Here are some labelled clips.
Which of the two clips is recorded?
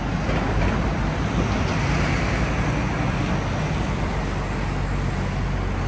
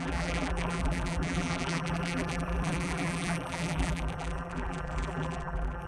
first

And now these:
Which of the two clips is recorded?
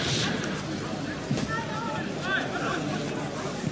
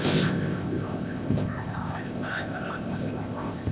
first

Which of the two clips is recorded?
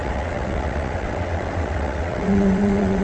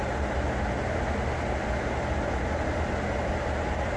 second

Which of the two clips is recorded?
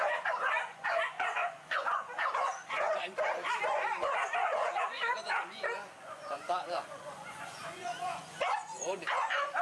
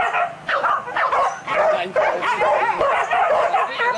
second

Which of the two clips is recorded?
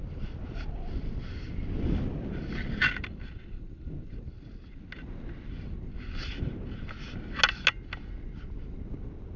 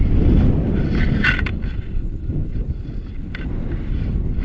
first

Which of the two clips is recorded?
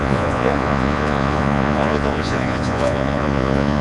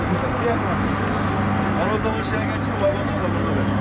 second